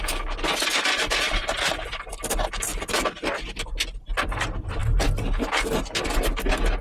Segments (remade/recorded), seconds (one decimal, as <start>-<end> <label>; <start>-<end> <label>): 0.0-1.4 recorded; 1.4-2.1 remade; 2.1-2.7 recorded; 2.7-3.7 remade; 3.7-6.8 recorded